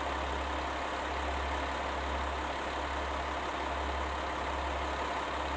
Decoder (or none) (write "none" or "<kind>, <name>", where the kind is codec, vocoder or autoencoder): none